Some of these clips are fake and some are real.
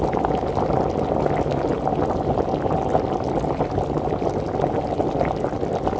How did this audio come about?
real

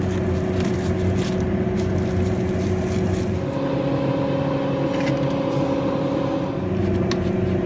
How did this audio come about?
real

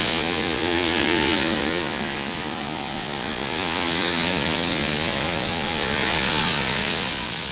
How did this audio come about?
fake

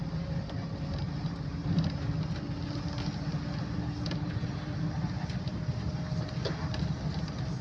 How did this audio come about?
real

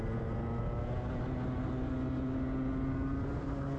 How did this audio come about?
real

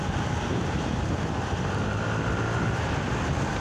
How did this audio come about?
real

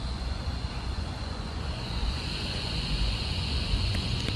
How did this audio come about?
fake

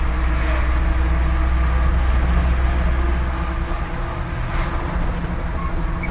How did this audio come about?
real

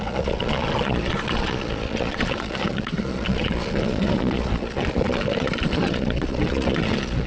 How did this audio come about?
fake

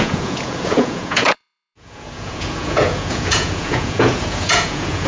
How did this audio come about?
fake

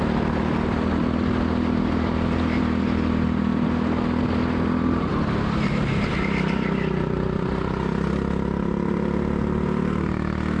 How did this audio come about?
real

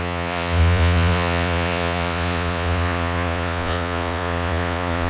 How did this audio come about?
fake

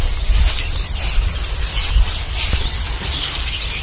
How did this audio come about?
real